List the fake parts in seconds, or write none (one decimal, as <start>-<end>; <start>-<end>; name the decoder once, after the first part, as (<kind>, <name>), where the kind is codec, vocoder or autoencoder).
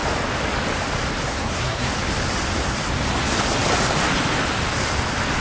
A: 1.3-1.9 (codec, SNAC)